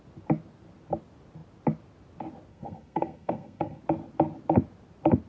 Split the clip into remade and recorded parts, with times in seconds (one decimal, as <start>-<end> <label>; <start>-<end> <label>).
0.0-2.5 recorded; 2.5-3.8 remade; 3.8-5.3 recorded